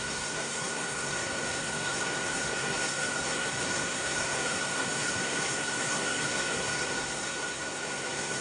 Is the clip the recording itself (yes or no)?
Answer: no